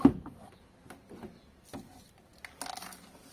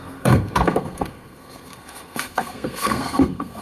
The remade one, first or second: second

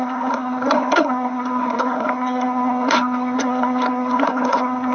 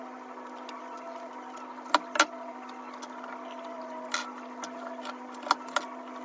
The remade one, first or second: first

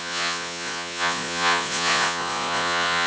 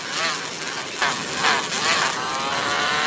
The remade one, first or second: first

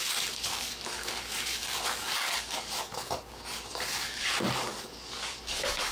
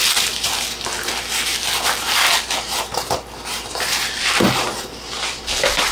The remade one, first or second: first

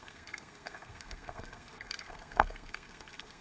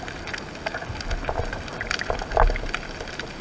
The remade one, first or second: first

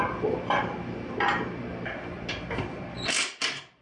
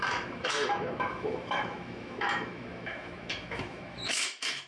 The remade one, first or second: second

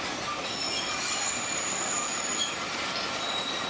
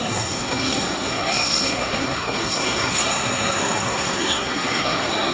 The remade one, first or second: second